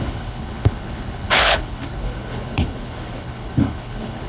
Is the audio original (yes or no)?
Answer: no